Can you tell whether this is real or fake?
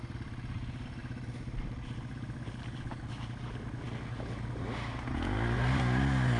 real